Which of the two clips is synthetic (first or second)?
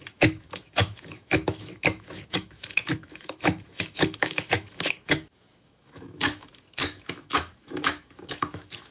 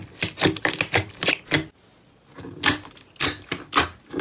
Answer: first